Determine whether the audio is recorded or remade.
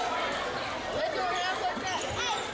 recorded